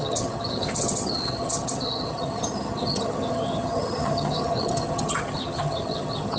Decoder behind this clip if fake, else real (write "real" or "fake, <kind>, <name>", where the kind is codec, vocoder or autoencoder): fake, vocoder, HiFi-GAN